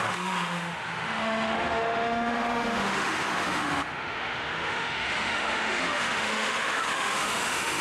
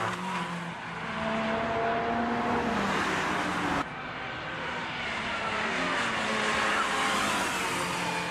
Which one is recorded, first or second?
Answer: second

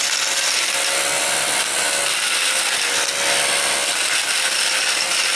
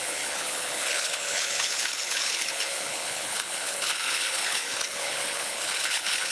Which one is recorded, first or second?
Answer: first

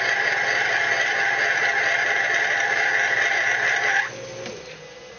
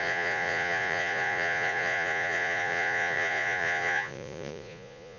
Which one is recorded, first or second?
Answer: first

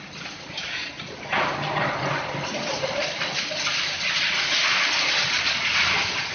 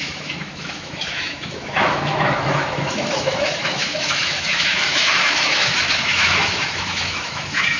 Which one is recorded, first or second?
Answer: first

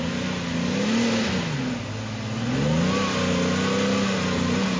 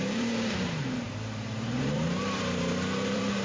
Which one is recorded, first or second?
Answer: first